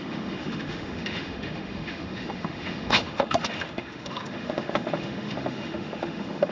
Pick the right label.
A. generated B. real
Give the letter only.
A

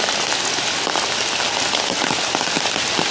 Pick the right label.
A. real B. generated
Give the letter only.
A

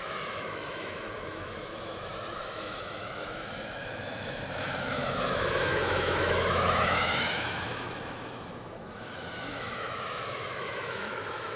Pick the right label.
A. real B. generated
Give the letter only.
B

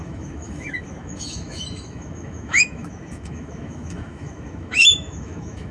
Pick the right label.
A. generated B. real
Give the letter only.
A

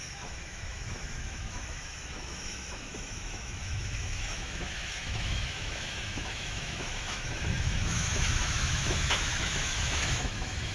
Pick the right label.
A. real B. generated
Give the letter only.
B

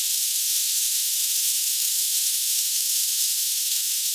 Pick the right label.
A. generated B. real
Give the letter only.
A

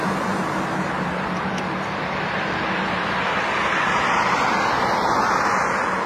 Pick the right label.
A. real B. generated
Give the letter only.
A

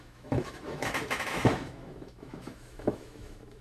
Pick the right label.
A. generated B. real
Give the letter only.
A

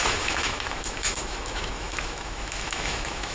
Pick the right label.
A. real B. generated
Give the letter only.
B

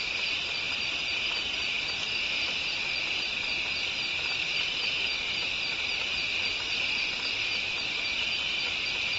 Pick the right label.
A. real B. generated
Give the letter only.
A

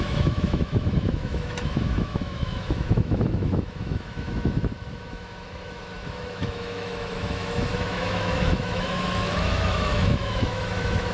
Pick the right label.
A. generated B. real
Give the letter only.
A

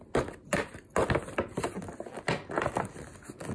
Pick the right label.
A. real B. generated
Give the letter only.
A